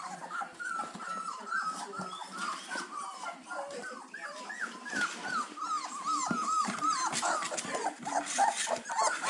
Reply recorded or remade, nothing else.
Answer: remade